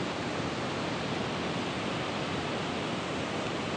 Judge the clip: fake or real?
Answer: real